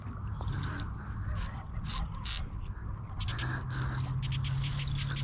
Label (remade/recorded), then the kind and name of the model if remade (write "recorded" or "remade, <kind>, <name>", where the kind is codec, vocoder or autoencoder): recorded